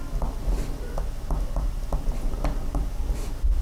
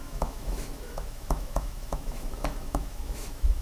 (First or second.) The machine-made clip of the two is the second